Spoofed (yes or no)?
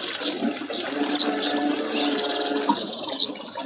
no